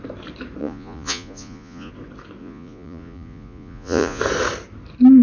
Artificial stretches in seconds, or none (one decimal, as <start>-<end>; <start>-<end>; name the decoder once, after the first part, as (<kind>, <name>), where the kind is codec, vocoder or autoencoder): 0.6-1.9 (vocoder, Vocos); 2.4-4.2